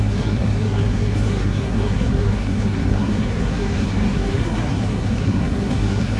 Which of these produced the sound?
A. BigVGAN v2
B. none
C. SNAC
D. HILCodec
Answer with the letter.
C